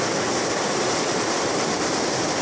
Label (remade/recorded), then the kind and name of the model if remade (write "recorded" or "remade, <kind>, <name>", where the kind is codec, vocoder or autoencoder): recorded